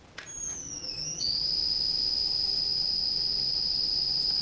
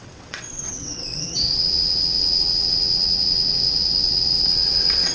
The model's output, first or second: second